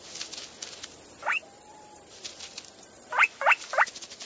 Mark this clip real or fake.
real